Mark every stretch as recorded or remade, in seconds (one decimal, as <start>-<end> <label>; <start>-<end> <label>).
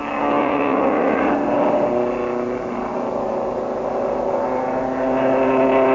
0.0-0.4 recorded; 0.4-1.3 remade; 1.3-5.9 recorded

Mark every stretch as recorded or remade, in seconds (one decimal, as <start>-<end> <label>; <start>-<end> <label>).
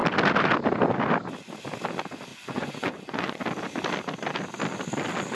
0.0-2.3 recorded; 2.3-3.4 remade; 3.4-5.3 recorded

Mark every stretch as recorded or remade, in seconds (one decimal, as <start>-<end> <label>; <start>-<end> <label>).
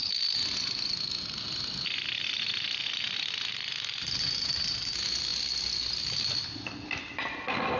0.0-7.8 recorded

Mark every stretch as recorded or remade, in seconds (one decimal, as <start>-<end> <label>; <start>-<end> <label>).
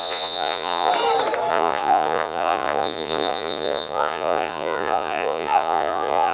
0.0-0.9 remade; 0.9-1.5 recorded; 1.5-6.3 remade